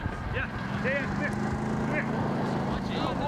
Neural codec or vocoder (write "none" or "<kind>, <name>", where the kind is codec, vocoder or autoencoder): none